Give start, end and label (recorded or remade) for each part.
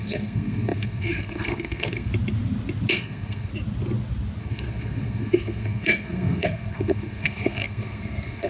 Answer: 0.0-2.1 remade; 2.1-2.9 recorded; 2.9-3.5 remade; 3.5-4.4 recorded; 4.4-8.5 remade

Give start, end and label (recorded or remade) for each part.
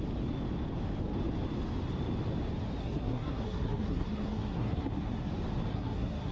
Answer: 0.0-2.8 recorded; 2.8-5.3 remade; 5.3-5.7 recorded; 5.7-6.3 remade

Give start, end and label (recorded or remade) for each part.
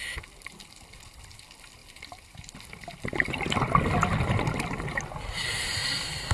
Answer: 0.0-6.3 recorded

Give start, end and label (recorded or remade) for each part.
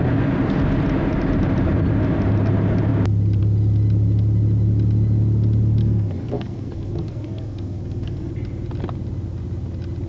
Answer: 0.0-5.8 recorded; 5.8-8.3 remade; 8.3-10.1 recorded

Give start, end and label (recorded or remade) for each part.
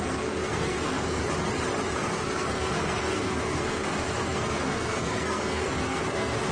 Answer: 0.0-1.2 remade; 1.2-2.0 recorded; 2.0-6.5 remade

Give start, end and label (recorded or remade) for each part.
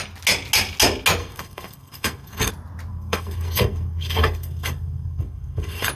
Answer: 0.0-1.2 recorded; 1.2-2.5 remade; 2.5-2.9 recorded; 2.9-5.9 remade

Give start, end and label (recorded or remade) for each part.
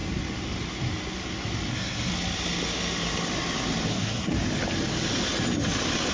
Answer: 0.0-1.7 recorded; 1.7-2.1 remade; 2.1-3.9 recorded; 3.9-4.3 remade; 4.3-6.1 recorded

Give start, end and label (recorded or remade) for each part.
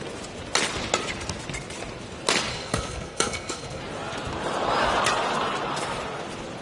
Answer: 0.0-2.5 recorded; 2.5-3.8 remade; 3.8-6.6 recorded